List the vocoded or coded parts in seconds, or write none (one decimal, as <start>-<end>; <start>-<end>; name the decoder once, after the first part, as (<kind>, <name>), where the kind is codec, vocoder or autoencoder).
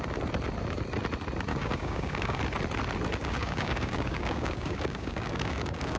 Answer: 1.5-2.4 (codec, DAC); 3.2-6.0